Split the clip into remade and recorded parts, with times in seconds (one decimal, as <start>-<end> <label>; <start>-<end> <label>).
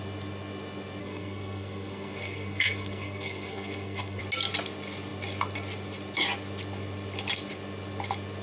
0.0-1.0 recorded; 1.0-4.2 remade; 4.2-8.4 recorded